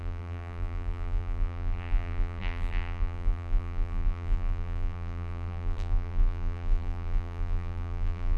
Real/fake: fake